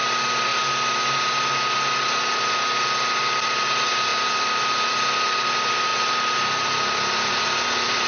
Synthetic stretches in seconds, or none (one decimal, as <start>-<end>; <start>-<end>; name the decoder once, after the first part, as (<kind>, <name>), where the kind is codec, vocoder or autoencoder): none